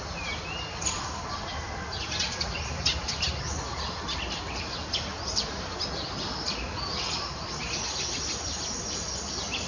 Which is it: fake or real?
real